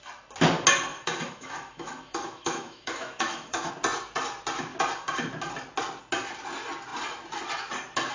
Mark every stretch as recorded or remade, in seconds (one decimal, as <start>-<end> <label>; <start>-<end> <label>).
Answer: 0.0-0.9 recorded; 0.9-3.7 remade; 3.7-8.1 recorded